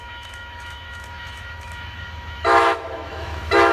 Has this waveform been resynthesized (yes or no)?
yes